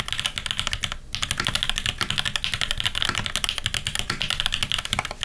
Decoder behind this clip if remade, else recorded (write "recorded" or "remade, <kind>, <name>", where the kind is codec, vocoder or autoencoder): recorded